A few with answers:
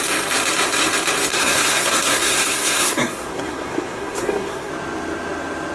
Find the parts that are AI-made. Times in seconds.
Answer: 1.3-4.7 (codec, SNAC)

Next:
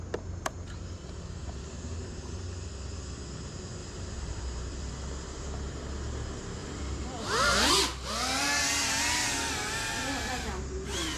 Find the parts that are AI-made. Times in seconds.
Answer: 3.8-4.9 (vocoder, BigVGAN v2); 6.6-7.7

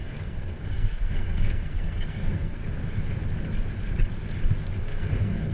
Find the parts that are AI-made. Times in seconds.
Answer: 0.0-2.6 (codec, SNAC); 4.8-5.5

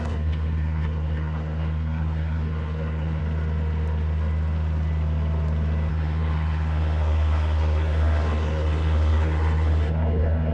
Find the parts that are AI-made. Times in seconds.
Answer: 0.0-3.2 (codec, SNAC); 5.9-10.5

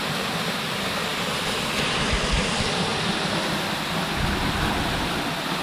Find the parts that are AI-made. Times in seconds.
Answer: none

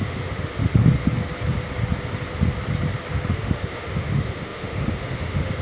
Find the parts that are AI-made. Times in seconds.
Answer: 0.0-0.8 (autoencoder, DAC-VAE); 3.3-5.6